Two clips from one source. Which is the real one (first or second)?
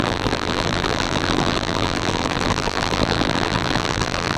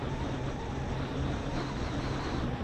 second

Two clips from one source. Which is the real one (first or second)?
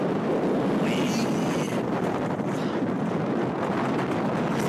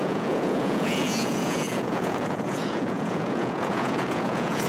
first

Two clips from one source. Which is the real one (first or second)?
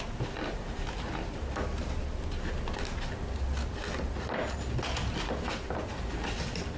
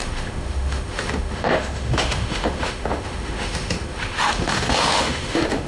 first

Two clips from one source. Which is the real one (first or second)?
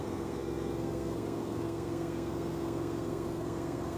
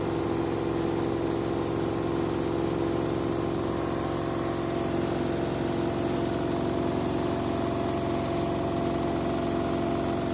second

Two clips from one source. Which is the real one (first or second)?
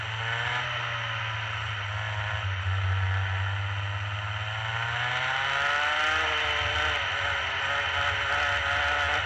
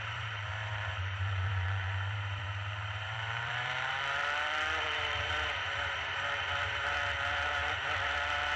first